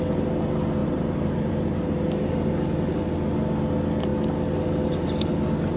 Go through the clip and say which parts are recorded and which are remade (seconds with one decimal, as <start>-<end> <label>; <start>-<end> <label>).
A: 0.0-0.8 recorded; 0.8-2.9 remade; 2.9-5.8 recorded